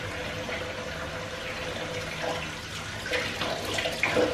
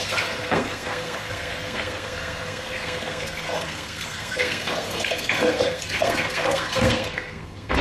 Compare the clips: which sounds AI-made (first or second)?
second